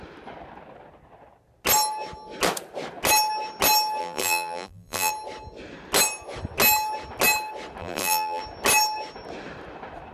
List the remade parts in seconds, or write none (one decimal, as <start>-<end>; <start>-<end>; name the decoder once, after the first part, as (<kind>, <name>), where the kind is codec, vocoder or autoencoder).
4.0-5.1 (vocoder, BigVGAN v2); 7.8-8.4